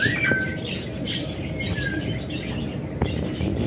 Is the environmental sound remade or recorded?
recorded